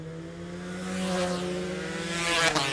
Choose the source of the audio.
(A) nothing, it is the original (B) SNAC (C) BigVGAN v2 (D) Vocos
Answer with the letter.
A